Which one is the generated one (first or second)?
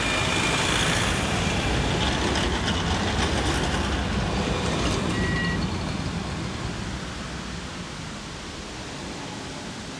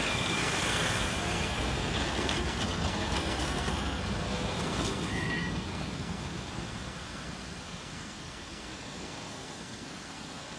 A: second